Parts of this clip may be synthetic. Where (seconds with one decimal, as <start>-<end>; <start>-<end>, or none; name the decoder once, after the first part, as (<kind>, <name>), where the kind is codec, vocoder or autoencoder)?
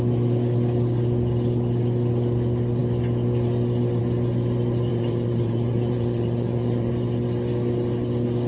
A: 4.9-6.9 (vocoder, Vocos)